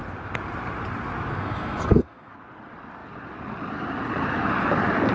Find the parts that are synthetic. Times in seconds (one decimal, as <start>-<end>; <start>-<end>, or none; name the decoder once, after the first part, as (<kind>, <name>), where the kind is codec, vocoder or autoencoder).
1.3-2.3 (codec, SNAC)